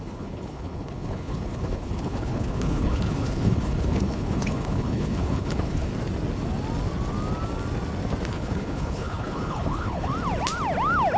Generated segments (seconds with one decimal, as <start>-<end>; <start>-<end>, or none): 0.0-5.9; 8.3-10.1